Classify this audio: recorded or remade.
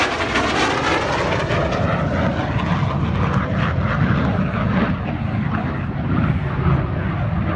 recorded